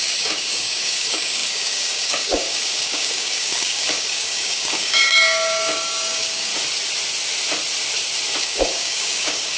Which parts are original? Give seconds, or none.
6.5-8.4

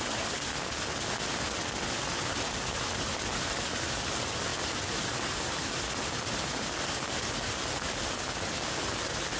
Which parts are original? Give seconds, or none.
0.0-9.4

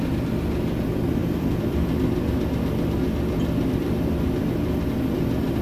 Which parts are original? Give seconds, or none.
0.0-1.2; 1.9-5.6